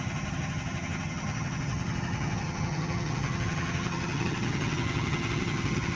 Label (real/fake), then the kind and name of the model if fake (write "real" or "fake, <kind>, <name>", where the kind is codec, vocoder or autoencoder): fake, vocoder, HiFi-GAN